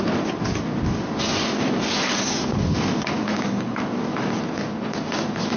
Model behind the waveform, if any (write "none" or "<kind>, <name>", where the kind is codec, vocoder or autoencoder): none